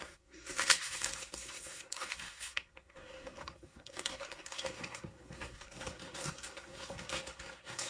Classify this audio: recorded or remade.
remade